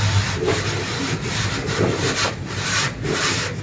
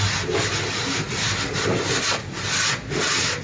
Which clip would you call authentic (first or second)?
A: second